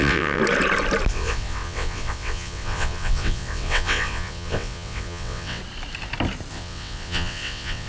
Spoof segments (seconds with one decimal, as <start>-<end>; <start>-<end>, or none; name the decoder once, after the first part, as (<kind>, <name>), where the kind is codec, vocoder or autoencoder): 0.0-0.4 (vocoder, WaveNeXt); 1.1-5.6; 6.5-7.9